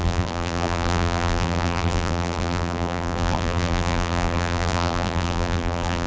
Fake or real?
fake